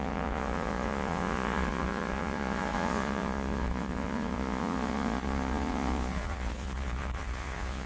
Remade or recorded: remade